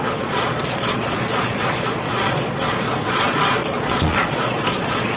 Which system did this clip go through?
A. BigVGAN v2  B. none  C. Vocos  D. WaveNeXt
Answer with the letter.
C